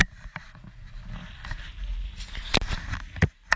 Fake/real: real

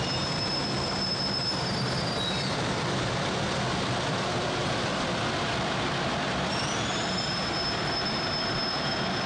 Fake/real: fake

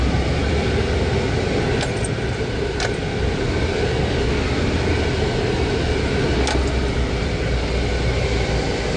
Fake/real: real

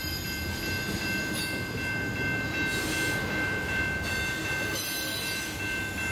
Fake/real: real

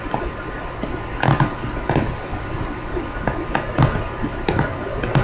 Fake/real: real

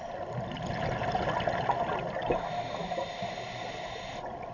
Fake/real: real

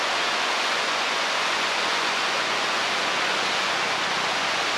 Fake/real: fake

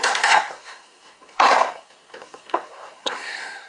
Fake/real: fake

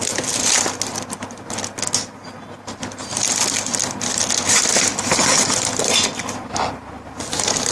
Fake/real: real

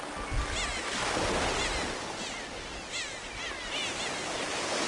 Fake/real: real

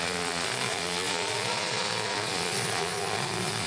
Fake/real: fake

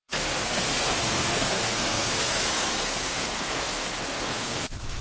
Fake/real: fake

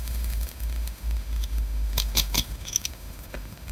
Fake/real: fake